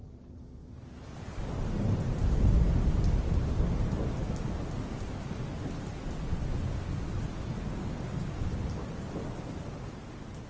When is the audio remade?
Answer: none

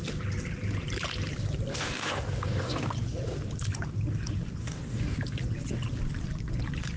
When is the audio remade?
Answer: 1.7-2.9; 4.6-5.2

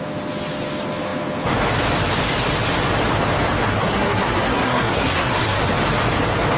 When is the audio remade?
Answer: 3.7-5.6

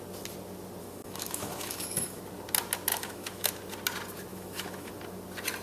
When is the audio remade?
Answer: 0.8-2.2; 2.9-3.5; 4.3-4.9

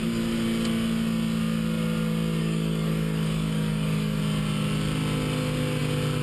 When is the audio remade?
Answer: 2.4-4.2

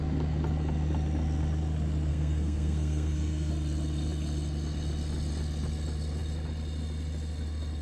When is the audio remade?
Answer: 2.1-3.5

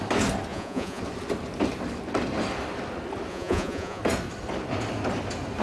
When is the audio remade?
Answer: 0.5-1.0; 3.3-4.0

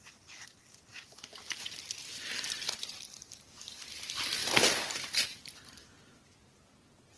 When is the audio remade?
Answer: 0.9-3.8